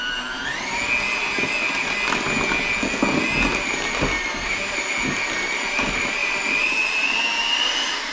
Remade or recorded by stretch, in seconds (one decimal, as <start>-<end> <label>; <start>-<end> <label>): 0.0-0.5 remade; 0.5-3.5 recorded; 3.5-8.1 remade

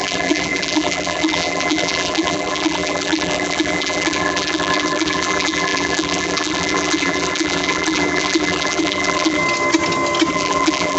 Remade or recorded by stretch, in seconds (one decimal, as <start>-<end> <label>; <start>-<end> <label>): 0.0-9.4 remade; 9.4-10.3 recorded; 10.3-11.0 remade

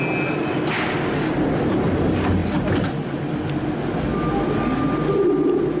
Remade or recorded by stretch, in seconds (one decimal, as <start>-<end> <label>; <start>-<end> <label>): 0.0-5.8 recorded

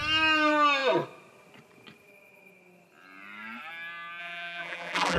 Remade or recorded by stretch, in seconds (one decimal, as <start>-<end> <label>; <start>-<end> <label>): 0.0-4.2 recorded; 4.2-5.2 remade

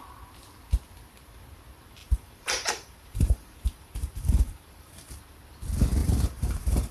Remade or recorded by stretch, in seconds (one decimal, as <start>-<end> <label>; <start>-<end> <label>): 0.0-2.0 recorded; 2.0-5.2 remade; 5.2-6.0 recorded; 6.0-6.9 remade

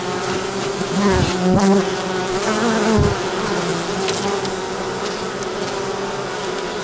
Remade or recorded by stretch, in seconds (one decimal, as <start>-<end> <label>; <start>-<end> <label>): 0.0-6.8 recorded